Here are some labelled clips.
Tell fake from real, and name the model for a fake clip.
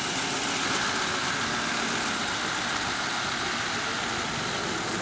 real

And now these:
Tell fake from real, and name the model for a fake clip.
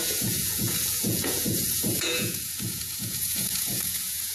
fake, vocoder, Vocos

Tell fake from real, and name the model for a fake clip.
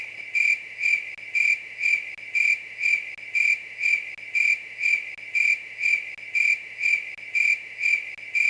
real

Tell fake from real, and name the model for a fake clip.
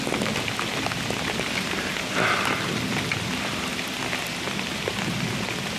real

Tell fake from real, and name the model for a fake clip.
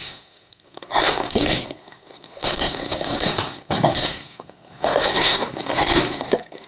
fake, codec, SNAC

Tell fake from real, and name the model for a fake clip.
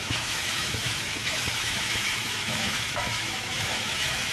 fake, autoencoder, DAC-VAE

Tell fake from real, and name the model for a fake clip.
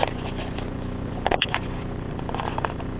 fake, vocoder, Vocos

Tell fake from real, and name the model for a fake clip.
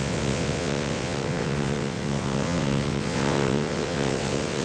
fake, vocoder, WaveNeXt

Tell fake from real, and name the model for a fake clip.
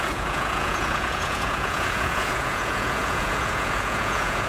fake, vocoder, Vocos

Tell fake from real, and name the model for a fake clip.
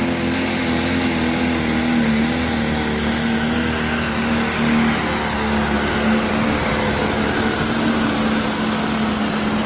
real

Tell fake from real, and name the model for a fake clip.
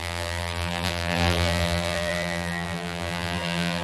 fake, vocoder, BigVGAN v2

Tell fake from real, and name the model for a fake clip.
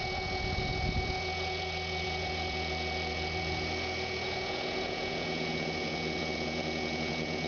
fake, vocoder, Vocos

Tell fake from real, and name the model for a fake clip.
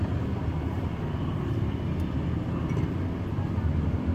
real